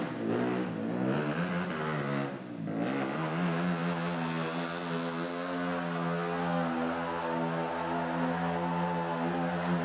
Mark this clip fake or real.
real